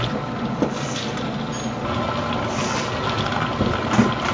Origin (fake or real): real